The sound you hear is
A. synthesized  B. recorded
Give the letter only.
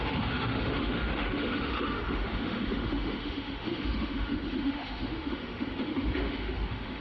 A